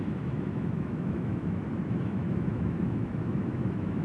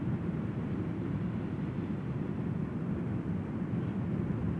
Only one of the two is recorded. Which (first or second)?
second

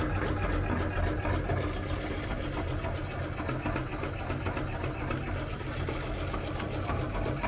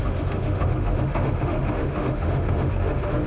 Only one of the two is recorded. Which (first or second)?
first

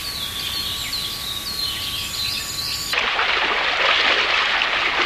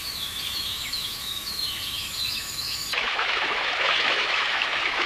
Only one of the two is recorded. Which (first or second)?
first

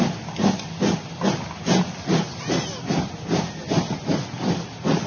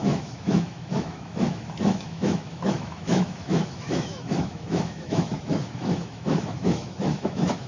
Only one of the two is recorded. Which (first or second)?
first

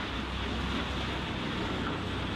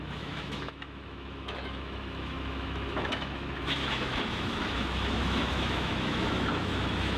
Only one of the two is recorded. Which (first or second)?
first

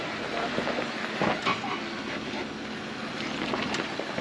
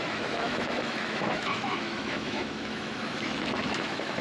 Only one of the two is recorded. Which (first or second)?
first